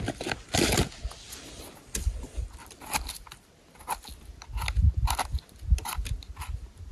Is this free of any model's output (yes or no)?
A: yes